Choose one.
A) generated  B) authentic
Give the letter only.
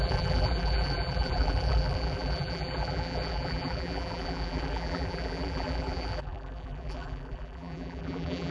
A